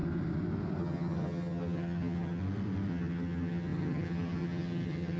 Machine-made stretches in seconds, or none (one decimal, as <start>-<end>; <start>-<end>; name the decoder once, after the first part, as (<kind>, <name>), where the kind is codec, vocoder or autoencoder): 0.8-2.4 (vocoder, HiFi-GAN); 2.9-5.2